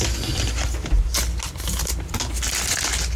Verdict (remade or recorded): recorded